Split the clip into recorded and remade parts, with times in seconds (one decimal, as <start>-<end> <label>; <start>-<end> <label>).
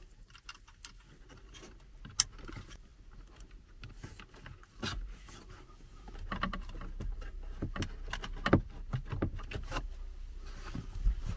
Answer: 0.0-11.4 recorded